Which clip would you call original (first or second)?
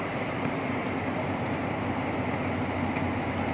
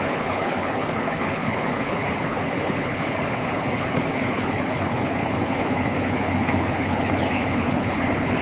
first